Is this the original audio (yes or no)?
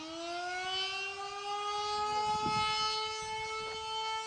yes